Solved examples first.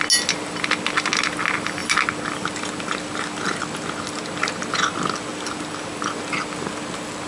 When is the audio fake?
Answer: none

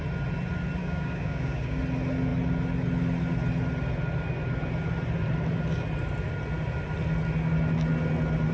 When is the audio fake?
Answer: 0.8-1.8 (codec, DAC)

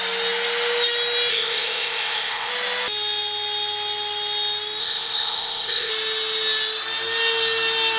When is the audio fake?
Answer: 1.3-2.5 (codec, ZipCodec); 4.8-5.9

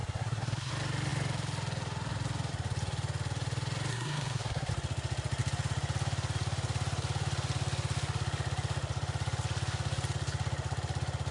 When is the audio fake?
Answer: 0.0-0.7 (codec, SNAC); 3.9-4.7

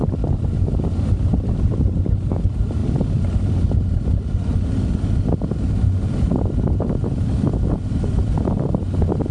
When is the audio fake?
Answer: 0.0-2.8 (vocoder, BigVGAN v2); 5.7-9.3

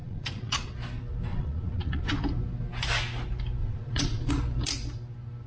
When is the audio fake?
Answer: 0.0-0.7 (vocoder, Vocos); 1.3-2.2; 3.6-4.3